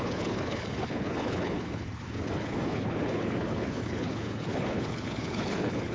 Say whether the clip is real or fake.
fake